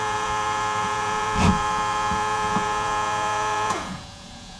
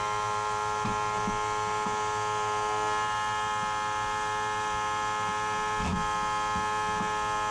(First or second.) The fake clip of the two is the first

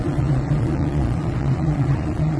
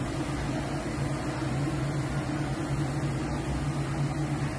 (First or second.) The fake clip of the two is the first